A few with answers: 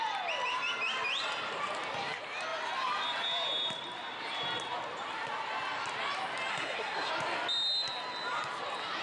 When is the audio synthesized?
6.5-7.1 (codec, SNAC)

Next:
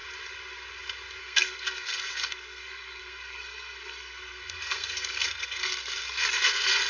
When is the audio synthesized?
1.2-6.9 (codec, SNAC)